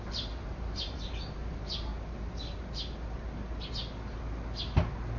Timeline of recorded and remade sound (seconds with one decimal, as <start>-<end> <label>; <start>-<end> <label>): 0.0-1.9 remade; 1.9-5.2 recorded